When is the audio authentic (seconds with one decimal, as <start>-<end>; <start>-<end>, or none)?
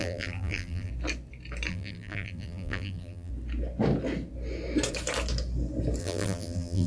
0.9-1.7; 3.3-6.0